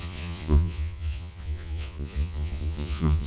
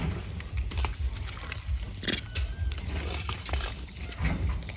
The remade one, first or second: first